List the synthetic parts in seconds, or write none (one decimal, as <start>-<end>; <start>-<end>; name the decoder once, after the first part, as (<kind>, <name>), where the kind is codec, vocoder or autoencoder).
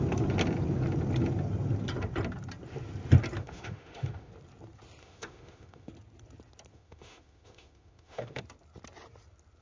3.4-4.3 (autoencoder, DAC-VAE); 5.0-5.9; 6.7-8.4